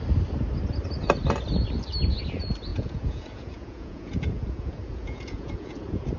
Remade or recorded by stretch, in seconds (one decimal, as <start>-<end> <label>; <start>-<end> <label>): 0.0-2.7 recorded; 2.7-6.2 remade